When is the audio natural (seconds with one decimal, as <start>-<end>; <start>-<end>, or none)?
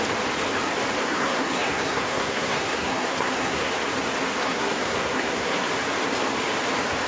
0.0-1.0; 3.7-4.4; 5.7-7.1